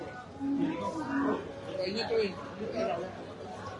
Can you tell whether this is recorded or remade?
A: recorded